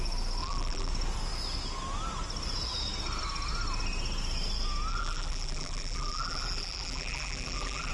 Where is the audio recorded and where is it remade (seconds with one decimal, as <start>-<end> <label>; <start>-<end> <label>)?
0.0-0.4 recorded; 0.4-0.9 remade; 0.9-4.9 recorded; 4.9-7.9 remade